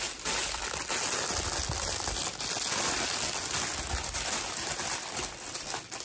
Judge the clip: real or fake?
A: real